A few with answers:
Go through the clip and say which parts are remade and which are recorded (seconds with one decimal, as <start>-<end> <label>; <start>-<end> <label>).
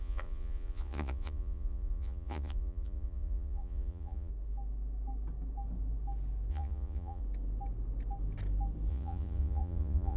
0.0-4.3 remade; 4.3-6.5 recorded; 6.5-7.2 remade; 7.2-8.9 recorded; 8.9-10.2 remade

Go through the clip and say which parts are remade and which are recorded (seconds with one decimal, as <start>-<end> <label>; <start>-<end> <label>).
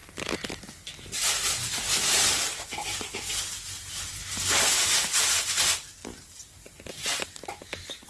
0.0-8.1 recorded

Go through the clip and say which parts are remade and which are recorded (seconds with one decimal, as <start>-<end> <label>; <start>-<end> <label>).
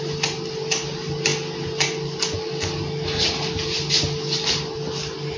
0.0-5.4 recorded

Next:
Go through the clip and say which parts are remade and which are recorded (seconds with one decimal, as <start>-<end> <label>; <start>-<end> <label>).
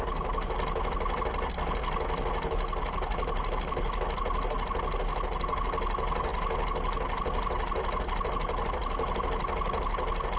0.0-10.4 recorded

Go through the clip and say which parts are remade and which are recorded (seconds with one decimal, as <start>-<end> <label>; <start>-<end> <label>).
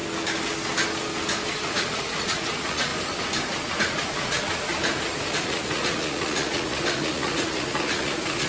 0.0-1.6 recorded; 1.6-2.9 remade; 2.9-3.7 recorded; 3.7-4.7 remade; 4.7-5.3 recorded; 5.3-8.5 remade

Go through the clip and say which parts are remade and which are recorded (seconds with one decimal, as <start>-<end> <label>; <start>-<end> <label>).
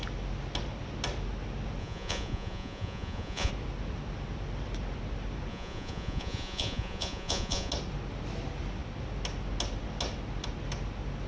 0.0-1.8 recorded; 1.8-3.5 remade; 3.5-5.5 recorded; 5.5-7.7 remade; 7.7-11.3 recorded